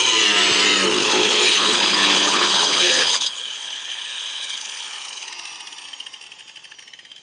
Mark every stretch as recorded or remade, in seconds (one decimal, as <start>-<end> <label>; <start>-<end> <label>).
0.0-1.0 recorded; 1.0-5.3 remade; 5.3-7.2 recorded